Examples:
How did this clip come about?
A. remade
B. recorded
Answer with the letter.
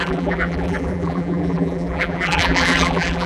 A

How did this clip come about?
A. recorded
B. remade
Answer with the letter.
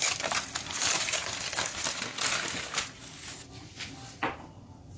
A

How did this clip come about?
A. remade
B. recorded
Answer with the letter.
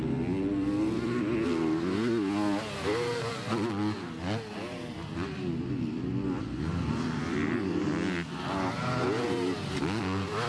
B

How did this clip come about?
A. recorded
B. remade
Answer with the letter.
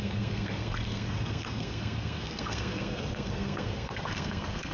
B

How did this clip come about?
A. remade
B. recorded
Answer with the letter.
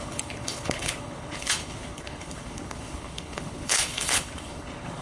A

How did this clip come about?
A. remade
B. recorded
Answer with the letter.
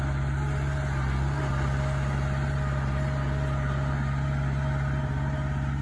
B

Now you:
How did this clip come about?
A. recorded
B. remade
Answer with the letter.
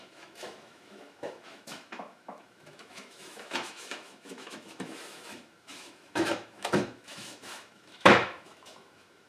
B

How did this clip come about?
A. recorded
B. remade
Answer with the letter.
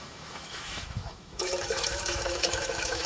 B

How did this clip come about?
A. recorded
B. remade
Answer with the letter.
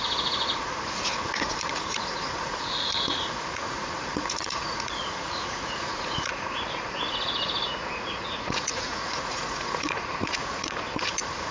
B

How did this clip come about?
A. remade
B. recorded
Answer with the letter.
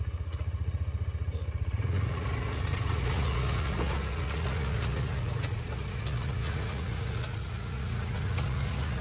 A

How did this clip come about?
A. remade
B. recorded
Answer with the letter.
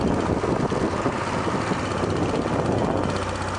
B